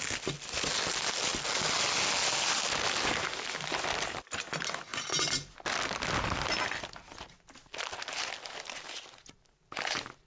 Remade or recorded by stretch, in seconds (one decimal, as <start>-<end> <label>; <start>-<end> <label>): 0.0-10.3 recorded